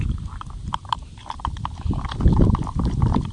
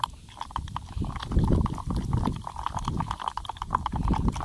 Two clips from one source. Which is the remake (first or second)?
first